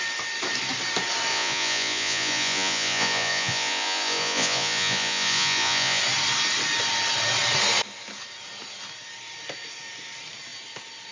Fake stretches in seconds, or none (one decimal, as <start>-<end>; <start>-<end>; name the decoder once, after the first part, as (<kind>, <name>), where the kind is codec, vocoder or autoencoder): 1.3-6.0 (vocoder, Vocos)